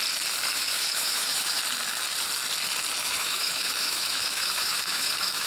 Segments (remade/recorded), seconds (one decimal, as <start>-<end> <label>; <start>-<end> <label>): 0.0-0.5 recorded; 0.5-1.6 remade; 1.6-3.0 recorded; 3.0-5.5 remade